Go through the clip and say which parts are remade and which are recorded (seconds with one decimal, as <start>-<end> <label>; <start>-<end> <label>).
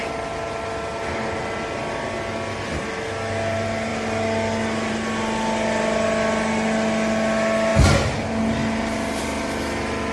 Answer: 0.0-10.1 recorded